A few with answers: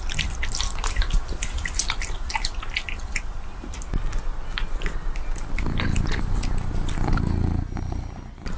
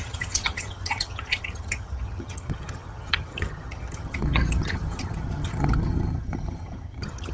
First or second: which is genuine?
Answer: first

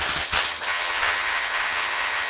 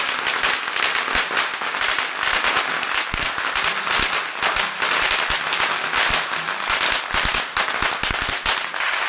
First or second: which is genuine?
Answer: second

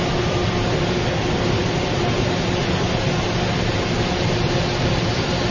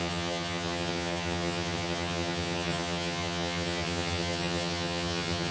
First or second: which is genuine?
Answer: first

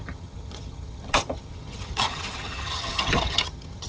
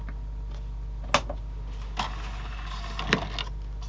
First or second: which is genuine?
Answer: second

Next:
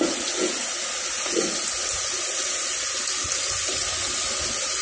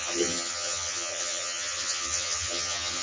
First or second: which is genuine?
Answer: first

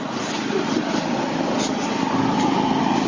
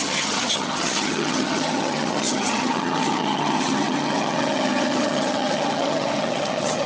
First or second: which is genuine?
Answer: first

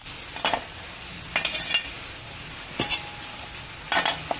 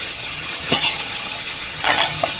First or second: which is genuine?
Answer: first